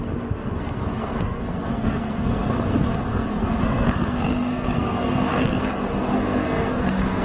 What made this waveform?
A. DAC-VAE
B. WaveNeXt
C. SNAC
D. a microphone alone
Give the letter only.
C